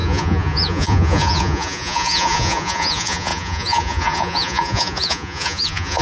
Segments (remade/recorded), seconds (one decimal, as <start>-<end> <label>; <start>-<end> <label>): 0.0-6.0 remade